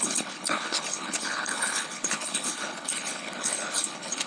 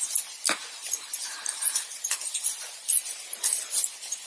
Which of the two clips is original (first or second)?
second